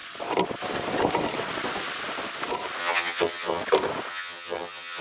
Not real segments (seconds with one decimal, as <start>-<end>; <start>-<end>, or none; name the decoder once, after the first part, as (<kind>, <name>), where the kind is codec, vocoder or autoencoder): 2.8-3.6 (vocoder, HiFi-GAN); 4.1-5.0